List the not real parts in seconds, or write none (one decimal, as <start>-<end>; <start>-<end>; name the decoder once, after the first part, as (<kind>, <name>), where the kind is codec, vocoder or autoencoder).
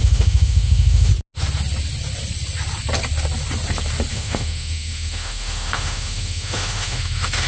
0.0-1.1 (autoencoder, DAC-VAE); 4.1-7.5